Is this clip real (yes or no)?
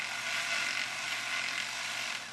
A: yes